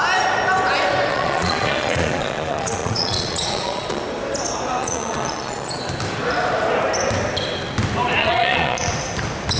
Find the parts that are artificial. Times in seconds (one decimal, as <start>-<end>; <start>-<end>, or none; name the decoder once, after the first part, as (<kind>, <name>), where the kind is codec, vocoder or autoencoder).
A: 1.1-4.0 (vocoder, Vocos); 4.8-5.8; 8.2-8.9